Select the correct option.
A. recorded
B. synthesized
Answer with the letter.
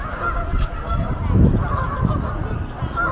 A